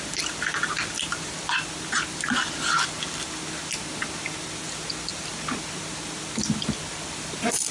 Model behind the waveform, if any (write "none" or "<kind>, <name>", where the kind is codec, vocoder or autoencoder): none